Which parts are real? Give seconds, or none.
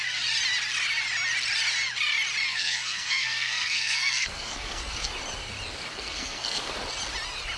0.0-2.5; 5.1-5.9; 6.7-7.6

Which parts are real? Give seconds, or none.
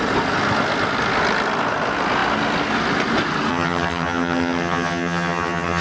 0.0-3.5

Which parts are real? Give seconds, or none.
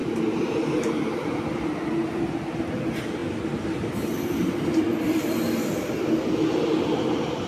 1.1-7.5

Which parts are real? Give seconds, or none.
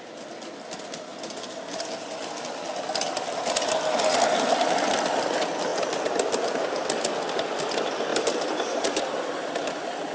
0.0-8.1; 9.0-10.1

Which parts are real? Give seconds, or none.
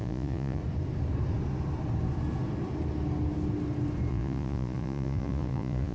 0.6-4.1